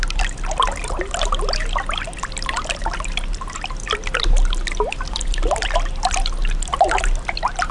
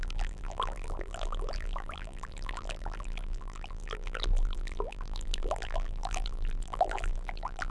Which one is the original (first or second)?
first